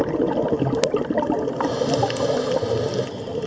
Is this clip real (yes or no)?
yes